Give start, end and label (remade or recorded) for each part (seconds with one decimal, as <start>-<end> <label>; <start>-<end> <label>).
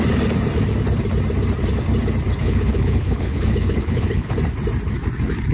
0.0-2.4 recorded; 2.4-4.3 remade; 4.3-5.5 recorded